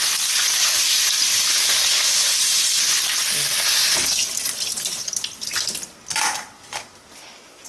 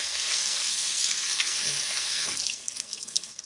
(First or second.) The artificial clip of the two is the second